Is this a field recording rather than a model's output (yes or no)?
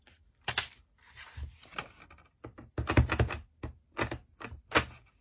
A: yes